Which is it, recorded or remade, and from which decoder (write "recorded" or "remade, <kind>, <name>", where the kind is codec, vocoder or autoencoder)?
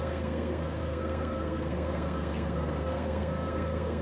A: remade, codec, SNAC